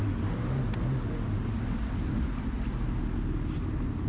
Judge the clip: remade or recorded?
recorded